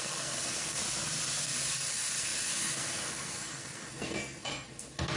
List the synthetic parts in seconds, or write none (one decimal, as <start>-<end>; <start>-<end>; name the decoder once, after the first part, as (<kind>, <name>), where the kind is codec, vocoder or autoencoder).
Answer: 0.0-0.8 (codec, SNAC); 1.4-5.2